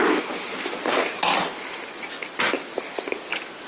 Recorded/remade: recorded